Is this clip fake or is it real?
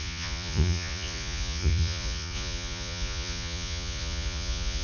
fake